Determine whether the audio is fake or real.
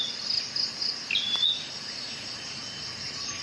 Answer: real